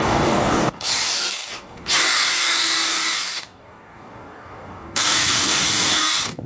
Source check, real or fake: fake